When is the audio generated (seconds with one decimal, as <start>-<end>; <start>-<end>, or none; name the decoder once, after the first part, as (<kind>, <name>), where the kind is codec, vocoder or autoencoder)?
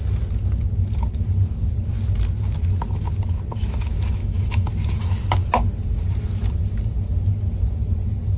4.2-4.7 (autoencoder, DAC-VAE)